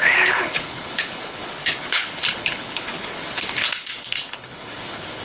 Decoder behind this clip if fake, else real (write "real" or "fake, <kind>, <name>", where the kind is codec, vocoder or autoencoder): fake, codec, HILCodec